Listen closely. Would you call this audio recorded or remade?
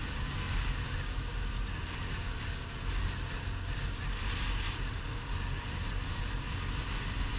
recorded